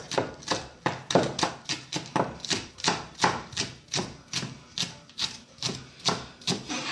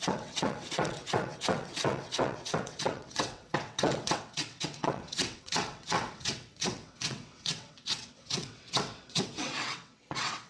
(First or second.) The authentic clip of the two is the first